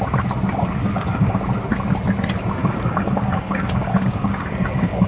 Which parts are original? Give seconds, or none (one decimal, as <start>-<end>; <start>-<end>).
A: 0.0-0.8; 1.4-2.6